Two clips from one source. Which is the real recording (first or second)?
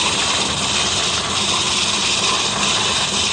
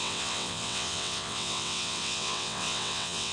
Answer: first